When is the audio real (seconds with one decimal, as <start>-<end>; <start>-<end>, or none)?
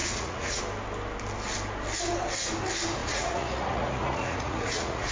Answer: 0.6-3.0